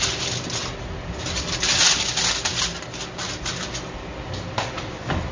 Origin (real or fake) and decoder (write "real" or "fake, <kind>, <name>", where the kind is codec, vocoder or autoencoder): real